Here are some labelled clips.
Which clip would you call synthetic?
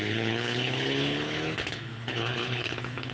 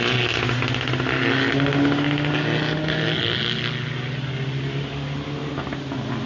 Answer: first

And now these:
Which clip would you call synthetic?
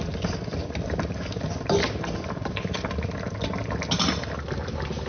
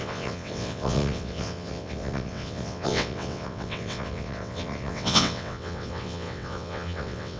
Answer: second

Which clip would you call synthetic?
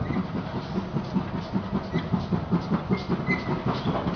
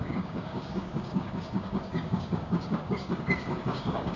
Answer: second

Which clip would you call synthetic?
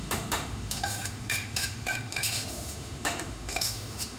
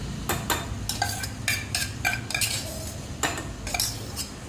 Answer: first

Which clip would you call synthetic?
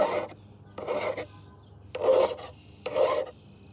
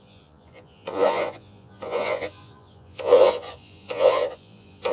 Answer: second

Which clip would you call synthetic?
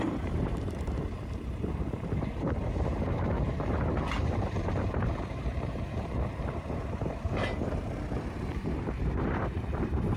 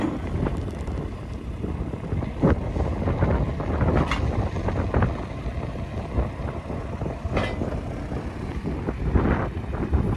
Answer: first